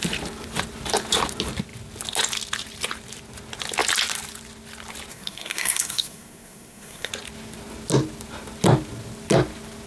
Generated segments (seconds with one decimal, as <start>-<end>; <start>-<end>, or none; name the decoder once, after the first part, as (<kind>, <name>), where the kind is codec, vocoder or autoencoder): 5.1-7.1 (codec, SNAC)